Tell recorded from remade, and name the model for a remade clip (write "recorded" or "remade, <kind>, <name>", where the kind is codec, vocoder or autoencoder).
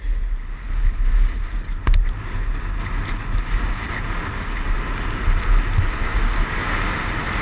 recorded